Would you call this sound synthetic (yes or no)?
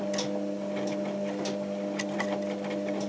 no